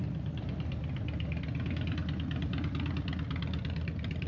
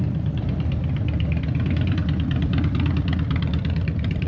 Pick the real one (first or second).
first